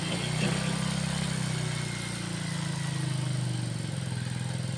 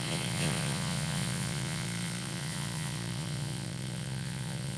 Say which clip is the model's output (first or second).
second